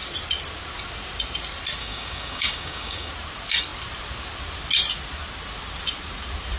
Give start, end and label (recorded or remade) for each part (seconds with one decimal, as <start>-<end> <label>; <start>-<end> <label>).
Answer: 0.0-1.8 recorded; 1.8-3.1 remade; 3.1-6.6 recorded